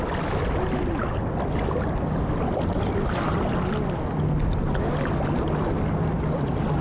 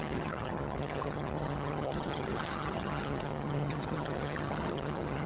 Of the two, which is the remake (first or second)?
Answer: second